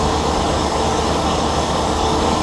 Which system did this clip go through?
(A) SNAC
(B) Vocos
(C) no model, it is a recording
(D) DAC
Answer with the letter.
D